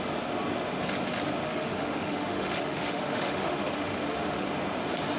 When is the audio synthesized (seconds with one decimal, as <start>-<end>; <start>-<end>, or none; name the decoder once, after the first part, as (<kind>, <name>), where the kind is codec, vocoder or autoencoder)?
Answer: 1.4-4.5 (autoencoder, DAC-VAE)